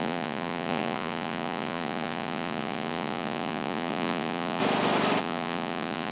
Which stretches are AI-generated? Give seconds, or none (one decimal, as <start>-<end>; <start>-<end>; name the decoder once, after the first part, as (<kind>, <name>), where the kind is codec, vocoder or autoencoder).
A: 0.0-4.6 (vocoder, Vocos); 5.2-6.1